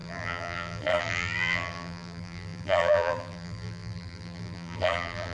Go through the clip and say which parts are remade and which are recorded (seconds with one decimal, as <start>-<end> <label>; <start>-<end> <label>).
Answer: 0.0-5.3 remade